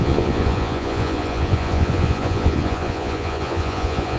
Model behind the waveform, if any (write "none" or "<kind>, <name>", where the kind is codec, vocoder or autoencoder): vocoder, Vocos